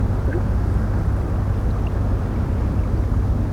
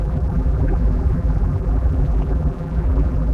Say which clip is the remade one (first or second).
second